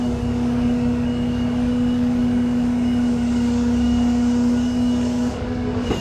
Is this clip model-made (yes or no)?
yes